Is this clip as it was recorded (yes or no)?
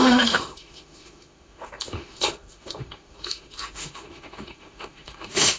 no